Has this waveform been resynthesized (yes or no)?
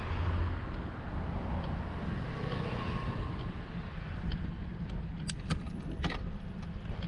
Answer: no